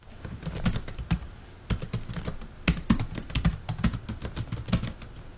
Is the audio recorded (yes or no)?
yes